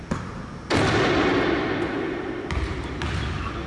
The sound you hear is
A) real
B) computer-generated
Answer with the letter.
A